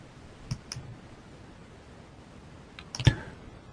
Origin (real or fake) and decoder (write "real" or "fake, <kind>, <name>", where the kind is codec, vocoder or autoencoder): real